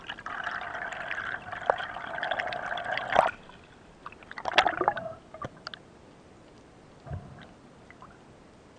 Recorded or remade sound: recorded